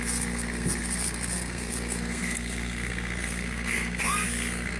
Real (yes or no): no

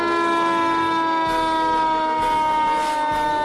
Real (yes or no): yes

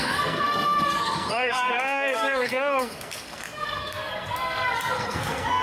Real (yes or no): no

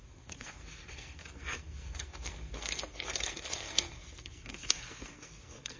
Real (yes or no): no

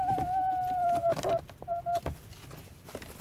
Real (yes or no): yes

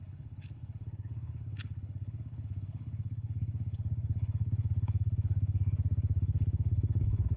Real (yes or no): no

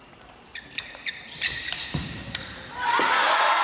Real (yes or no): no